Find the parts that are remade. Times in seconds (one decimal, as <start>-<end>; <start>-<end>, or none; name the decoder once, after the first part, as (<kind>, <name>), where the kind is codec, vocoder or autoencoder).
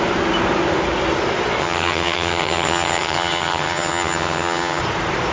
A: 1.6-4.8 (vocoder, HiFi-GAN)